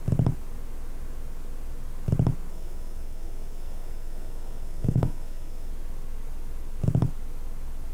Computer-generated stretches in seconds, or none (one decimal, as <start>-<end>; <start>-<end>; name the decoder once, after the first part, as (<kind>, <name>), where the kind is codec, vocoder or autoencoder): 2.5-5.7 (codec, SNAC)